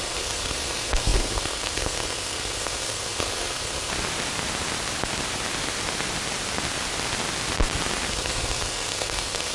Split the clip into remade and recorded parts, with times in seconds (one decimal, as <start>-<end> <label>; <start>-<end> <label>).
0.0-3.9 remade; 3.9-8.1 recorded; 8.1-9.5 remade